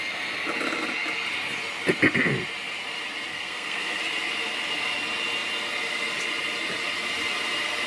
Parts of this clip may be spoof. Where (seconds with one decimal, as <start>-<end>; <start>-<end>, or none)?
3.3-4.0

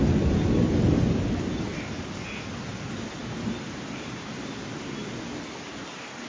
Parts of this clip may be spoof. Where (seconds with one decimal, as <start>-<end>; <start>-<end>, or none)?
none

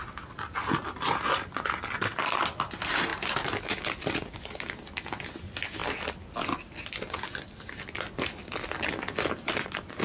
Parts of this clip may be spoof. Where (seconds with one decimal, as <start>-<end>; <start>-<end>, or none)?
none

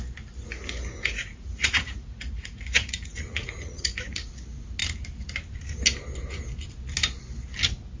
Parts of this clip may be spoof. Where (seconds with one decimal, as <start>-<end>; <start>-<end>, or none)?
1.0-4.3

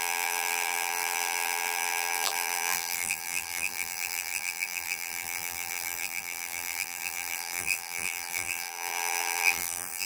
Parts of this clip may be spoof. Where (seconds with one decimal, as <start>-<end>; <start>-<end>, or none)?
0.0-10.1

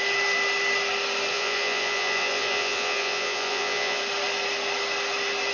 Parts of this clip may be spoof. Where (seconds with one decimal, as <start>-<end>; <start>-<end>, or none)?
1.3-4.0

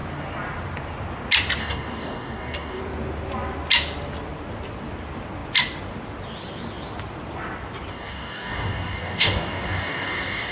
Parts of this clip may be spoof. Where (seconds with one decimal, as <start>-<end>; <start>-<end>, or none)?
1.6-2.8; 7.9-10.5